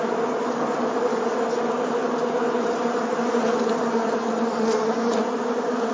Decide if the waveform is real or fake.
real